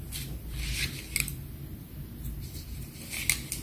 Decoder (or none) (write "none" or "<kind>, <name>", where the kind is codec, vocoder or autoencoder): none